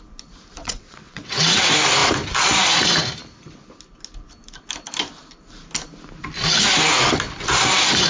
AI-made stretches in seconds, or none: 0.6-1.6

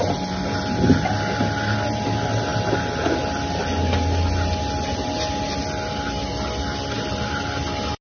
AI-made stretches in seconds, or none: none

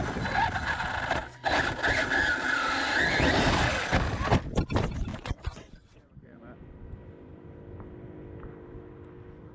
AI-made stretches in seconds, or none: 5.1-6.4

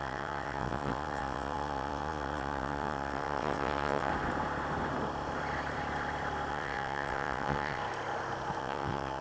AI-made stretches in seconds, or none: 0.0-4.1; 6.5-7.8; 8.6-9.2

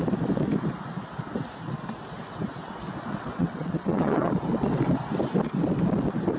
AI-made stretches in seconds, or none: 3.1-4.3

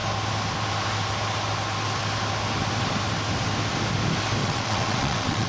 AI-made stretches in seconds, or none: 4.4-5.5

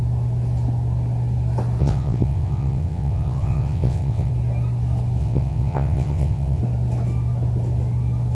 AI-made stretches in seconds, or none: 1.8-4.3; 5.2-6.6